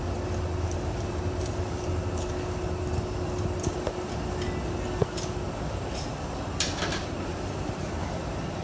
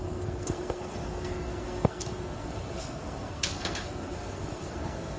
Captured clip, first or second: first